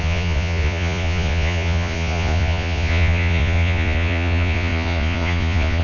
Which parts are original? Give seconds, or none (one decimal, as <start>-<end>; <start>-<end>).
none